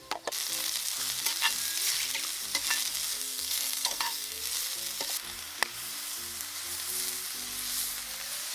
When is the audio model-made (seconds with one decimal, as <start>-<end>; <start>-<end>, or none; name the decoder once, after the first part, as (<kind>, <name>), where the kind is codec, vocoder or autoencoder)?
3.1-4.4 (codec, SNAC)